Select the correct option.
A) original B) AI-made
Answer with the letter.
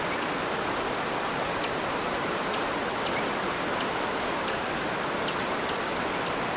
A